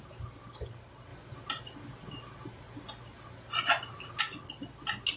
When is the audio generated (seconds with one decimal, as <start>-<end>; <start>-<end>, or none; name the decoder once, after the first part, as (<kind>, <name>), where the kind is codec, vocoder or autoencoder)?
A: none